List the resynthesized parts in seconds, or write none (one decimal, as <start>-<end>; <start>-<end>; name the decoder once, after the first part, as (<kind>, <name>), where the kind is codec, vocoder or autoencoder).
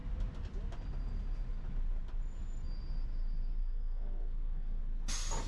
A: 3.6-4.8 (codec, SNAC)